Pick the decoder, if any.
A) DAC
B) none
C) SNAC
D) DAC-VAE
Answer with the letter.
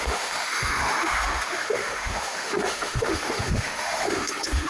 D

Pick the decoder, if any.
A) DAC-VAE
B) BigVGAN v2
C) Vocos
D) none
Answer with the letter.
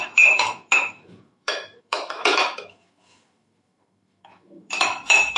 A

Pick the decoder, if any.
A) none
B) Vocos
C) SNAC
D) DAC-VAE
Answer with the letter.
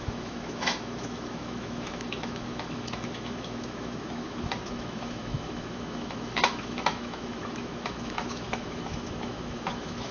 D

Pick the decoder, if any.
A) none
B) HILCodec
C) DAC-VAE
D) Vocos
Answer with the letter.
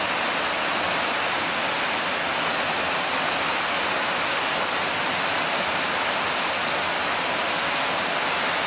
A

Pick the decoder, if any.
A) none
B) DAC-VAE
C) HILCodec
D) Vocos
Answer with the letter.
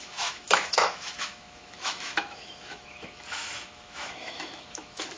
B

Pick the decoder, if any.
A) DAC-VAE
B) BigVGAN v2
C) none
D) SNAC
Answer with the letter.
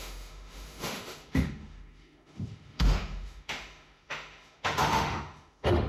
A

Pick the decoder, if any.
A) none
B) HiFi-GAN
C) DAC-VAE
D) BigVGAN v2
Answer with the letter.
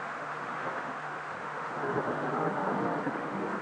C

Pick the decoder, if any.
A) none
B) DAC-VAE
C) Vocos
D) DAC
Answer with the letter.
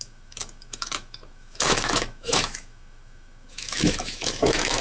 B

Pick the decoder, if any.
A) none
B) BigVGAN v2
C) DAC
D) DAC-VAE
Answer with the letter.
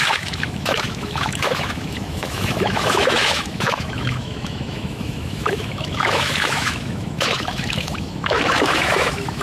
D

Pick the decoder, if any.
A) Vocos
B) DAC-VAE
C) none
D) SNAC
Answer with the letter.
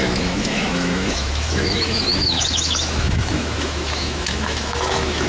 B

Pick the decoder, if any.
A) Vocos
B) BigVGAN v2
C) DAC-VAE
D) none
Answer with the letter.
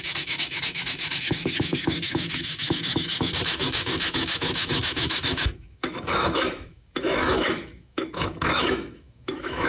C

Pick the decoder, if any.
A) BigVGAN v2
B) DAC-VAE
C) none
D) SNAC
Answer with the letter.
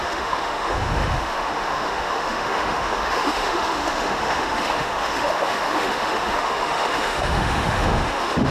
B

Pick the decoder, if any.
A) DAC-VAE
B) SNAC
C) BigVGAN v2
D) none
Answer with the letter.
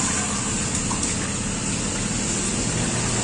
D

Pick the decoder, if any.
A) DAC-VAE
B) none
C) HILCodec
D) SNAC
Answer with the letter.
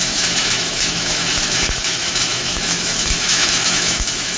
A